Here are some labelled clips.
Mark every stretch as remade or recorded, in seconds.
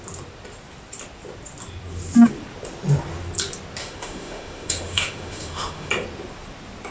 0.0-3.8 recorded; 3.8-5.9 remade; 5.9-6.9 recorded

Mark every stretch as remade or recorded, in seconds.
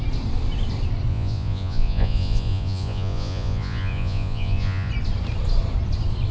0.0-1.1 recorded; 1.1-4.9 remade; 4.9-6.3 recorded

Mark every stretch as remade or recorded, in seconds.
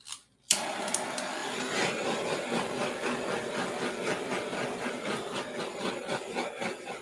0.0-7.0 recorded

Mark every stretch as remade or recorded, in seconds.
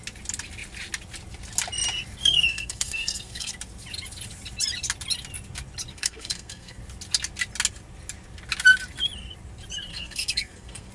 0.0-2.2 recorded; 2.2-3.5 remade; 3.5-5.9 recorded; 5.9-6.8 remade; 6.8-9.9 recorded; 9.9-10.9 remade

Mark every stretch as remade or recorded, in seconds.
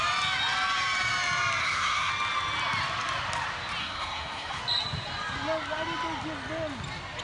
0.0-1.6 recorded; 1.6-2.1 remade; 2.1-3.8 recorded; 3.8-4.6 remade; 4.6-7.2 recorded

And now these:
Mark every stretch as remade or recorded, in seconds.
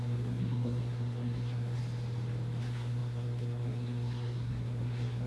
0.0-1.8 remade; 1.8-2.6 recorded; 2.6-5.3 remade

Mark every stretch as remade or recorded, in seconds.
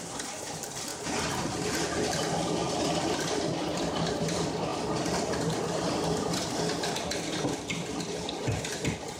0.0-2.6 recorded; 2.6-3.5 remade; 3.5-9.2 recorded